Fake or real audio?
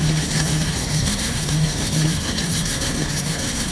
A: fake